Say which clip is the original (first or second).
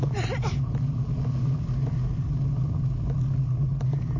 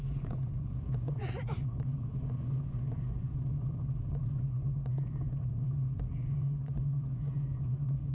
first